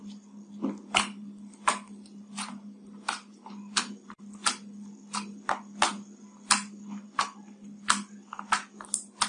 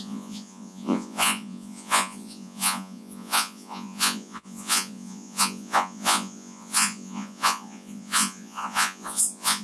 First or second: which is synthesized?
second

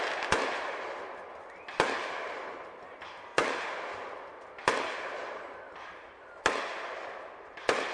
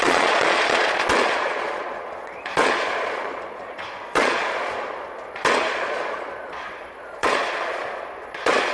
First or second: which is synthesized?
second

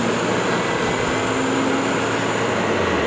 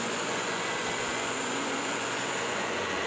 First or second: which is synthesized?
second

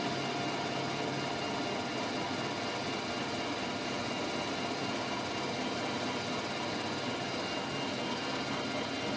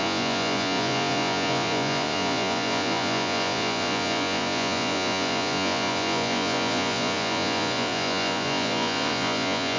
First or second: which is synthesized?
second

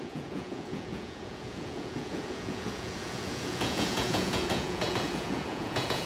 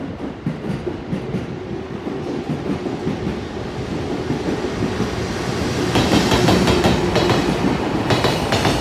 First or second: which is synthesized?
first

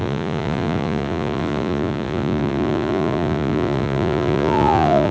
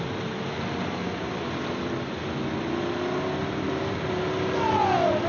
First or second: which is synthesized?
first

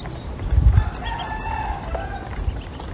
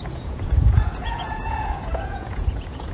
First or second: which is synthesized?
second